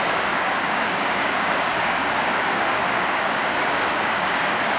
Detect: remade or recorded remade